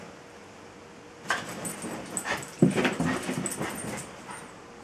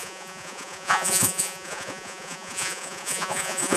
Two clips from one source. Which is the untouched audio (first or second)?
first